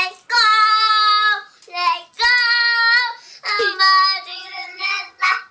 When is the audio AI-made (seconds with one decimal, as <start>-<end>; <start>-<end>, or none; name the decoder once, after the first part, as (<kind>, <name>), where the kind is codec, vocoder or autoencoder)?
4.3-5.5 (vocoder, HiFi-GAN)